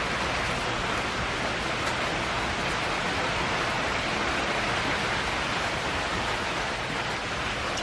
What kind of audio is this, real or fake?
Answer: real